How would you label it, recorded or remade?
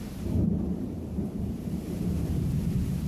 remade